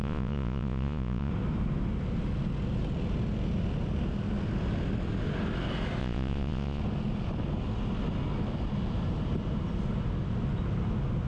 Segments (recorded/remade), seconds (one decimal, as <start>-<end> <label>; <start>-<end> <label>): 0.0-1.3 remade; 1.3-6.0 recorded; 6.0-6.8 remade; 6.8-11.3 recorded